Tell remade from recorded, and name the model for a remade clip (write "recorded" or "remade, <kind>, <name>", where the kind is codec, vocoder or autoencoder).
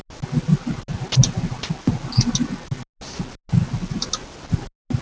recorded